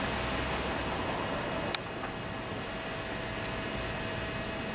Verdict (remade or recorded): recorded